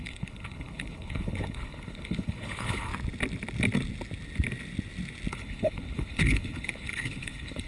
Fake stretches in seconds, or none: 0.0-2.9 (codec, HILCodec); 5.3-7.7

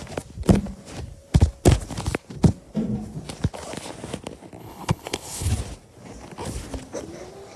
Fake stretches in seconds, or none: 4.6-5.5 (codec, HILCodec)

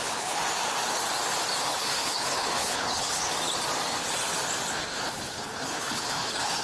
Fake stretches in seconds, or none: 0.0-0.4 (codec, HILCodec); 1.6-3.2; 4.7-6.6